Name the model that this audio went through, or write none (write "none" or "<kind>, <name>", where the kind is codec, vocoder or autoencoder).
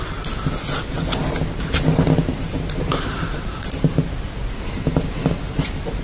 none